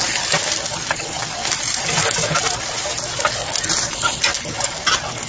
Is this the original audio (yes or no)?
yes